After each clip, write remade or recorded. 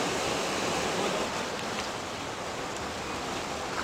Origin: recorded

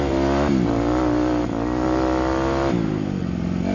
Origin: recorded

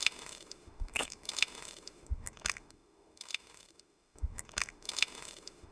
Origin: remade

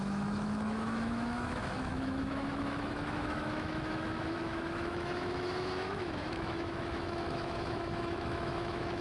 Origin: remade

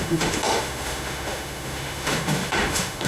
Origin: remade